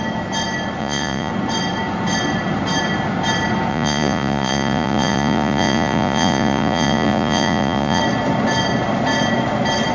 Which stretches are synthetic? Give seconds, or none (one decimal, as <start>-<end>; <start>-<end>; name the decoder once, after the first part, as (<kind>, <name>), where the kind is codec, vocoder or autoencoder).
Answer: 0.8-1.3 (vocoder, Vocos); 3.7-8.0